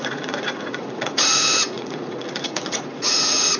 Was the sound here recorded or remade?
remade